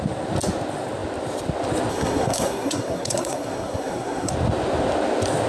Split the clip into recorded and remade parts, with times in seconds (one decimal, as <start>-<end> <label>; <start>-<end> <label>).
0.0-1.9 recorded; 1.9-4.3 remade; 4.3-5.5 recorded